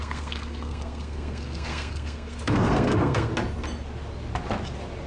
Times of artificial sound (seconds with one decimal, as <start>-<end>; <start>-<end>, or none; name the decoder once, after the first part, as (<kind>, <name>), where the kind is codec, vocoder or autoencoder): 0.0-3.3 (codec, SNAC)